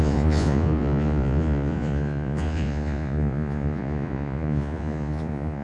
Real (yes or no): no